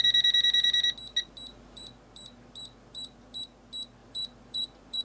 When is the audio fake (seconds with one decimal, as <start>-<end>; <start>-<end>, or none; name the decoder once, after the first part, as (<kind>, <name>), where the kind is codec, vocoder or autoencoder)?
1.5-3.4 (vocoder, BigVGAN v2); 4.0-5.0